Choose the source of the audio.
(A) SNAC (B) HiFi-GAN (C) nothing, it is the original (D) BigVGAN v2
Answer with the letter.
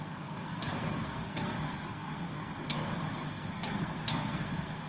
A